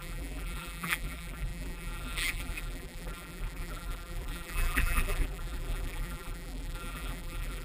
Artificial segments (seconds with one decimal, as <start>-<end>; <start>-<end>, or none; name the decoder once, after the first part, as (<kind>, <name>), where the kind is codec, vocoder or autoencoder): 0.0-7.6 (vocoder, BigVGAN v2)